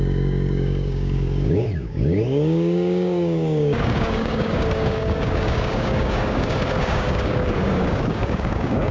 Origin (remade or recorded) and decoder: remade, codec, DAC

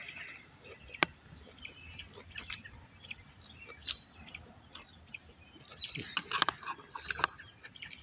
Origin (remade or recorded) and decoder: recorded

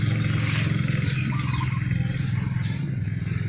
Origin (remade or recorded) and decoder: recorded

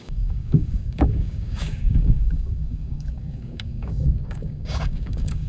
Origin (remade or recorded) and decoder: remade, codec, DAC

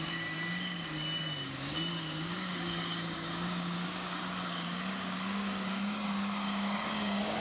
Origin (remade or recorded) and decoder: remade, codec, DAC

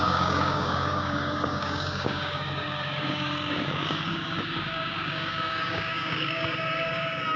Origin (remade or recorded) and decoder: remade, codec, DAC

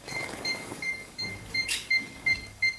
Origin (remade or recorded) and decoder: remade, codec, DAC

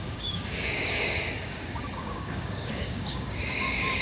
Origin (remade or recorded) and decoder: remade, codec, DAC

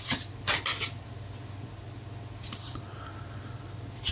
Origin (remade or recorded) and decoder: recorded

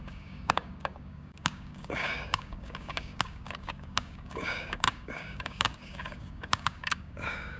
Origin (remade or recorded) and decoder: remade, codec, DAC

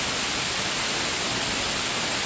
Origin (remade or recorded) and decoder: recorded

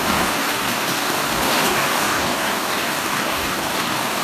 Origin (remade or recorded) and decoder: remade, codec, DAC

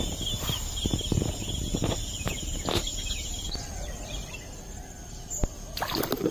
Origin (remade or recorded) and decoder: recorded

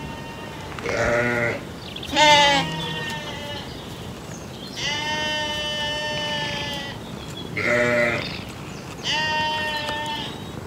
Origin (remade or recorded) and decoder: recorded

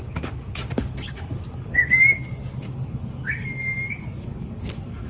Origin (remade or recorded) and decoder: remade, codec, DAC